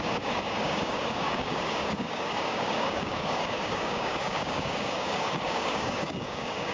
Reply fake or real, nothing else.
fake